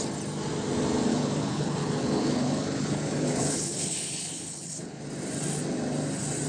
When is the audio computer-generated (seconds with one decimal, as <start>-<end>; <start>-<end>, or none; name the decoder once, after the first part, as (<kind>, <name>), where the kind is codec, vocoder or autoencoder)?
1.1-5.0 (codec, HILCodec)